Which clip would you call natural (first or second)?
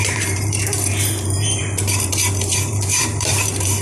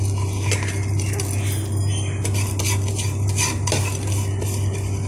second